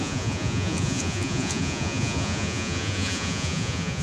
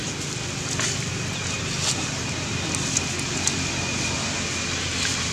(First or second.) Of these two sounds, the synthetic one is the first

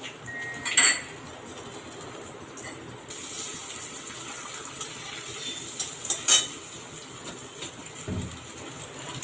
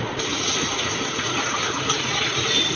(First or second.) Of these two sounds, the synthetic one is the second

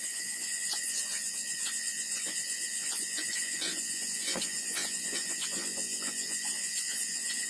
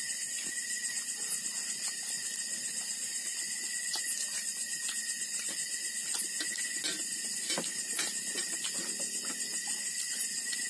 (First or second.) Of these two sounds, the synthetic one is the first